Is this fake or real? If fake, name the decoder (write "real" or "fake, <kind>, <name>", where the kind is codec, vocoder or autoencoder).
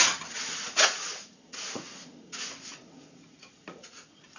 fake, vocoder, Vocos